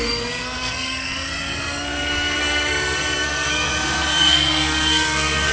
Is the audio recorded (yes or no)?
no